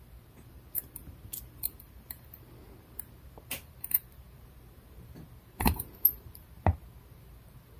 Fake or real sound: fake